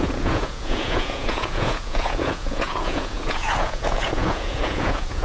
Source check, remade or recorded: remade